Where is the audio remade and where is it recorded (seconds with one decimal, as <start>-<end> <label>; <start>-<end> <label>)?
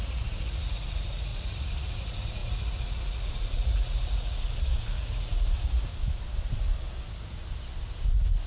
0.0-5.9 remade; 5.9-8.5 recorded